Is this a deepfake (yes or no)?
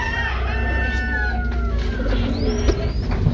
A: no